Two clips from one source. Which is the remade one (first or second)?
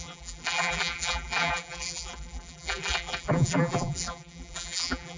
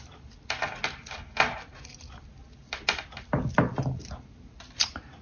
first